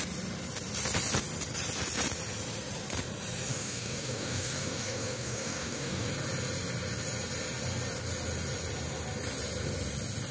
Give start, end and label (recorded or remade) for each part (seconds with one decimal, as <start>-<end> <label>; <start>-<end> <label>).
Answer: 0.0-3.5 recorded; 3.5-6.1 remade; 6.1-10.3 recorded